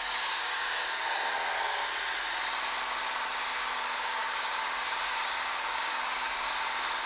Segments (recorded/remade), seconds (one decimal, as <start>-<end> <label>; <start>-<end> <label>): 0.0-1.8 remade; 1.8-3.4 recorded; 3.4-7.1 remade